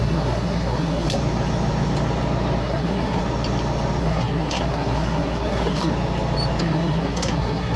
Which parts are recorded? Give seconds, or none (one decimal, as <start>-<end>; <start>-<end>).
1.2-2.6; 3.2-4.0; 5.9-6.6